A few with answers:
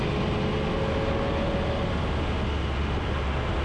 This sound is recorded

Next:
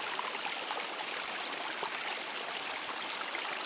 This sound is recorded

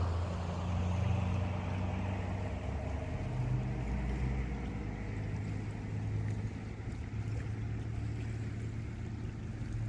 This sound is recorded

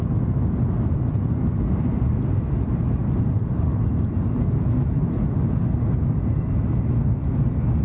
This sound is recorded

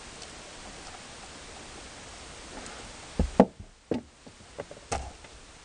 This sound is recorded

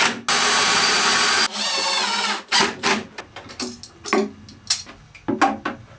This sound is recorded